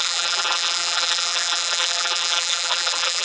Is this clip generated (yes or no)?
yes